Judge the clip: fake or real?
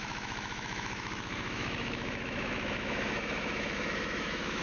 fake